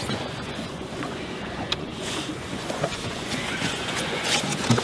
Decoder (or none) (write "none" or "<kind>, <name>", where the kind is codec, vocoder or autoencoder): vocoder, Vocos